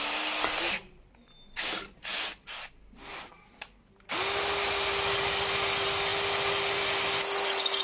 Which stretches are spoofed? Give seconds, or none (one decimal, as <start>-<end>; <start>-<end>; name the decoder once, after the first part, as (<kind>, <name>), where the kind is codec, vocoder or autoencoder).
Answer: none

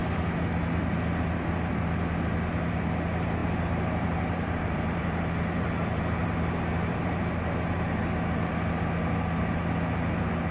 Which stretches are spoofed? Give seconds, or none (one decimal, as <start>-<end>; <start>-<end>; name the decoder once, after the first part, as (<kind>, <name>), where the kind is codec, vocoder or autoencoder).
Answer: 3.4-7.3 (vocoder, BigVGAN v2)

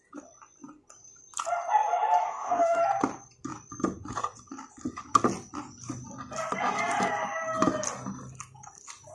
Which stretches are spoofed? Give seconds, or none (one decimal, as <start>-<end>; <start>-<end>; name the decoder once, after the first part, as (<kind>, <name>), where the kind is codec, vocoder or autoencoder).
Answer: 2.2-2.8 (codec, DAC)

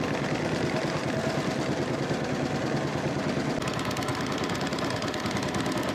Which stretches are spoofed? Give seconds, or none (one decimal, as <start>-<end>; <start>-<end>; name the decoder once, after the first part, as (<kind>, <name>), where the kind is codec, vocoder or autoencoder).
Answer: none

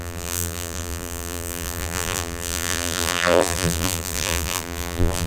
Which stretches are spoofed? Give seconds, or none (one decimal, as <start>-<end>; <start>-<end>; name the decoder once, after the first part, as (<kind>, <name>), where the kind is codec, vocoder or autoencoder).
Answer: 0.0-5.3 (vocoder, BigVGAN v2)

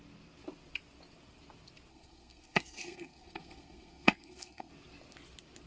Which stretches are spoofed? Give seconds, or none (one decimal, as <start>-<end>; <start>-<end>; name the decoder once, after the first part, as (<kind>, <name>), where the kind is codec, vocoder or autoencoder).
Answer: 1.9-4.7 (codec, SNAC)

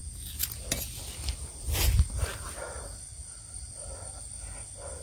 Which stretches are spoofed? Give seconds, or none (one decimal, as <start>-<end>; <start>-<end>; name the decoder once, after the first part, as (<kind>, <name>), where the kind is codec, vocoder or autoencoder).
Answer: none